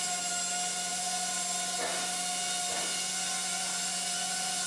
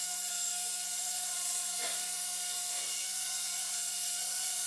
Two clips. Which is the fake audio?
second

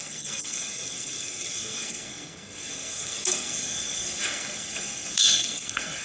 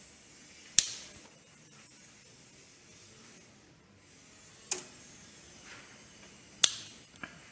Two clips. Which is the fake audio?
first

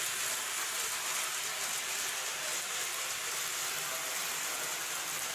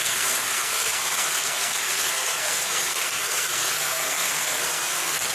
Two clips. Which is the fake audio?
second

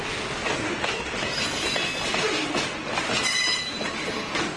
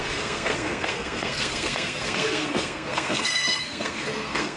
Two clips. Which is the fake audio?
second